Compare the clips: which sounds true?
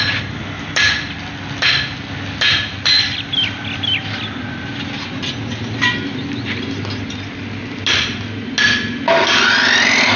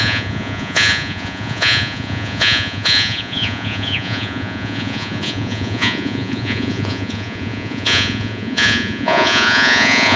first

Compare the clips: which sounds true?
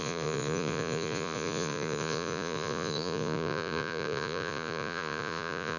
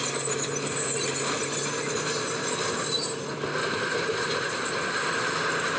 second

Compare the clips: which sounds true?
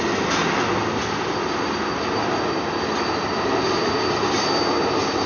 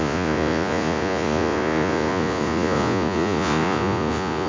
first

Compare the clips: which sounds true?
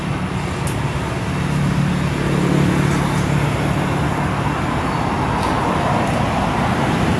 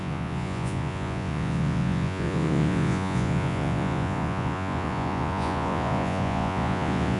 first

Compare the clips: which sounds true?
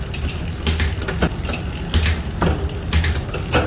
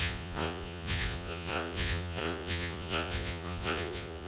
first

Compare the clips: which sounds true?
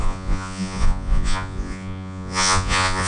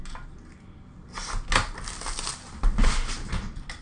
second